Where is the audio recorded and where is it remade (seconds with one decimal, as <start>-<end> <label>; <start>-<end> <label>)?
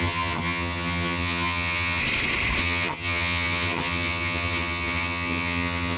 0.0-2.0 remade; 2.0-2.6 recorded; 2.6-6.0 remade